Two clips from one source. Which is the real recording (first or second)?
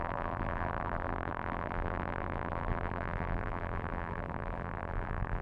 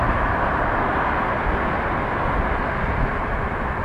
second